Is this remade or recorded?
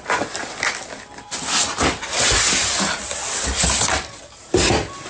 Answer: recorded